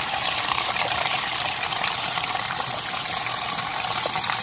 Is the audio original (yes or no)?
no